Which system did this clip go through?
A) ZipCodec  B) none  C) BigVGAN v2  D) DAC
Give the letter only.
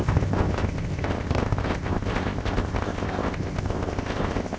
A